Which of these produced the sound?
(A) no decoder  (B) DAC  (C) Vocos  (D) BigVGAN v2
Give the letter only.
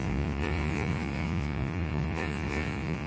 C